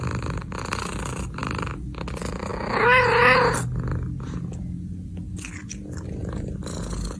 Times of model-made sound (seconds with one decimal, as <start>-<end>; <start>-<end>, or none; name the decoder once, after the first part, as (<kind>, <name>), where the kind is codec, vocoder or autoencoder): 6.2-6.8 (vocoder, BigVGAN v2)